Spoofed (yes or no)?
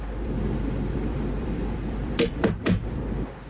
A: yes